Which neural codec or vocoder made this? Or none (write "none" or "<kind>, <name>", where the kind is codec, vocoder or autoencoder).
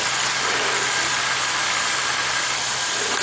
none